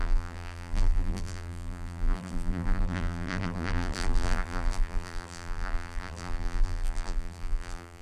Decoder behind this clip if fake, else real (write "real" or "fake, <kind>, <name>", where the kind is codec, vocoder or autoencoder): fake, vocoder, BigVGAN v2